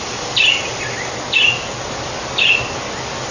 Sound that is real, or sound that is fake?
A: real